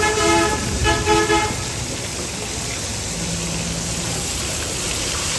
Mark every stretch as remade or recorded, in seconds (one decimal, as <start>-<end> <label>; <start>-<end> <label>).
0.0-0.8 remade; 0.8-4.0 recorded; 4.0-5.4 remade